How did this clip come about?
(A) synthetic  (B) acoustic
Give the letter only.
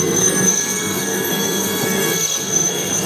A